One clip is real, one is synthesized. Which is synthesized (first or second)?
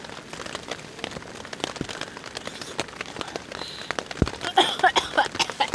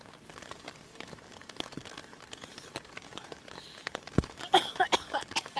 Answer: second